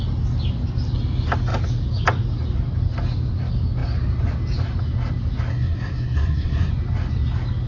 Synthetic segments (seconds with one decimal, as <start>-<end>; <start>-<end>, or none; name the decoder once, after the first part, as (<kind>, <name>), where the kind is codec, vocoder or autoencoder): 5.5-6.7 (codec, SNAC)